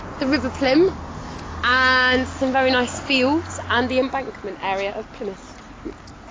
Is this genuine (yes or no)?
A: yes